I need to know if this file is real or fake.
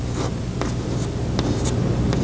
real